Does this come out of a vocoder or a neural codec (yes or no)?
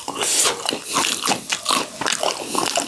no